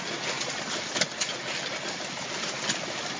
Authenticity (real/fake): real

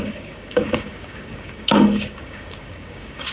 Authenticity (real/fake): fake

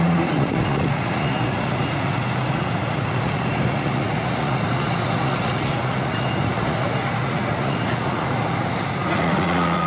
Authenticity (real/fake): fake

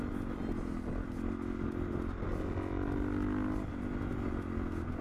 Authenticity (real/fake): real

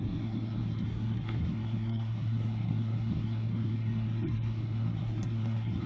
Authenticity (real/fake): fake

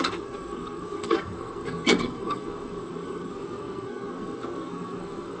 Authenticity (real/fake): fake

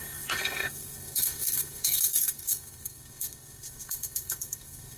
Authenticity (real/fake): fake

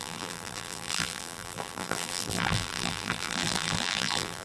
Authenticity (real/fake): fake